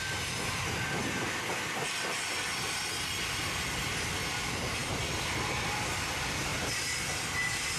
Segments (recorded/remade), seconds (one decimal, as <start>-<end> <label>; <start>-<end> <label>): 0.0-6.5 recorded; 6.5-7.2 remade; 7.2-7.8 recorded